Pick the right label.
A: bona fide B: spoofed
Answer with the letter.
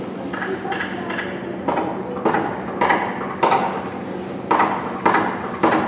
A